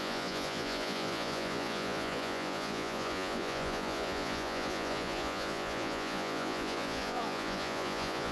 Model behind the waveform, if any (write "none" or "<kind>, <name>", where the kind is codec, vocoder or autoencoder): vocoder, Vocos